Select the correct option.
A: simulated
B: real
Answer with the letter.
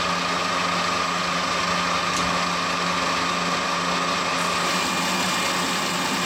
B